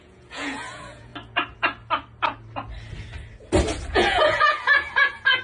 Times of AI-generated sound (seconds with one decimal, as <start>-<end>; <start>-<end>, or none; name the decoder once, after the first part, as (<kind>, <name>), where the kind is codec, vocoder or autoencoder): 0.0-1.1 (vocoder, Vocos); 3.9-5.4